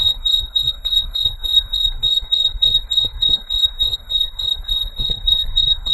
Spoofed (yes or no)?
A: yes